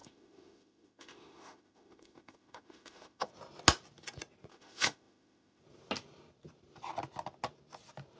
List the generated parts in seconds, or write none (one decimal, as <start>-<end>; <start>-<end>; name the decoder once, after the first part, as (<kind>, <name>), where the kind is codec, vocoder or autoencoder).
0.0-3.3 (autoencoder, DAC-VAE); 4.5-5.6